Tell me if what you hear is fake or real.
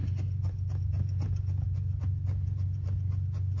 real